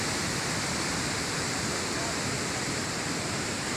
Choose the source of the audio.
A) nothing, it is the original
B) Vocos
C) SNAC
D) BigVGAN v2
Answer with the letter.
D